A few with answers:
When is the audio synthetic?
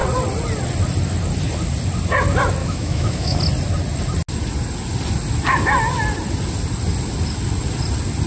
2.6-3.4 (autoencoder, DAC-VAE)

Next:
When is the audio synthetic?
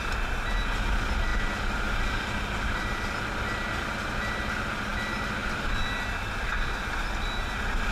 none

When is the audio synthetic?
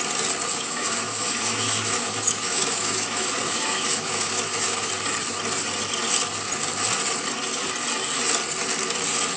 0.5-4.9 (autoencoder, DAC-VAE)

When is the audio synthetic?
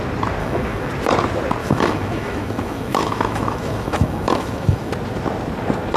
0.4-0.9 (autoencoder, DAC-VAE); 1.6-4.9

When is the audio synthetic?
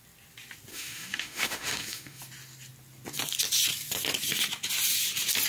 0.7-2.2 (autoencoder, DAC-VAE)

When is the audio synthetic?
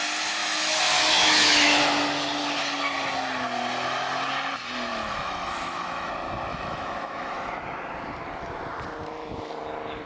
0.4-1.8 (autoencoder, DAC-VAE); 4.9-6.1; 6.5-7.5